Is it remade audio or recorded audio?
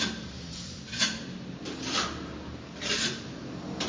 remade